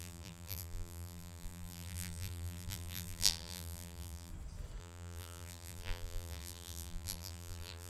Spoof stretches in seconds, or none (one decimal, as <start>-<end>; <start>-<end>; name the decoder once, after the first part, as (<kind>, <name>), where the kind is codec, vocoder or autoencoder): 0.0-4.3 (vocoder, BigVGAN v2); 4.8-7.9